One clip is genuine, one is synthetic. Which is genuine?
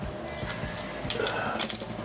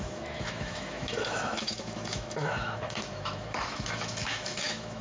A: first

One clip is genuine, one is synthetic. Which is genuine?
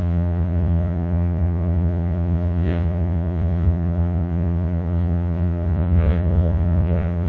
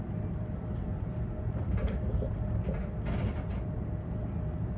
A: second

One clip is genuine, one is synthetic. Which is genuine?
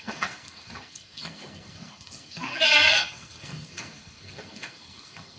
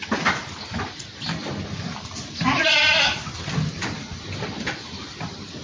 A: second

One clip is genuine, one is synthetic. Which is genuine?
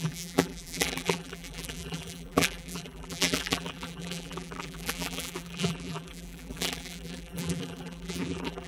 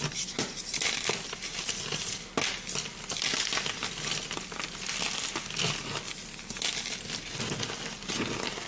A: second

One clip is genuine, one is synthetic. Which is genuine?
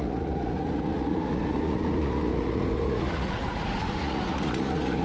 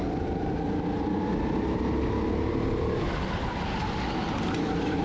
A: second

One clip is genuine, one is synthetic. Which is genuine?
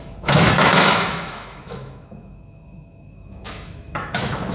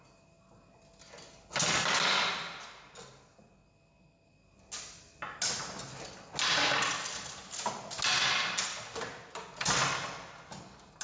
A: second